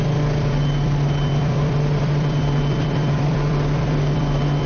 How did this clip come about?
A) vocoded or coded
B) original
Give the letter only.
A